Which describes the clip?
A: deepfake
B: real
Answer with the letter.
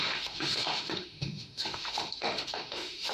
A